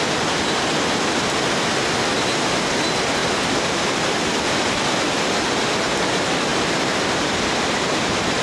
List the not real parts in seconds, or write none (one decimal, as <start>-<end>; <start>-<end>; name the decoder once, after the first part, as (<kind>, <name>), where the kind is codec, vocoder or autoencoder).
3.2-3.7 (vocoder, BigVGAN v2); 6.5-8.4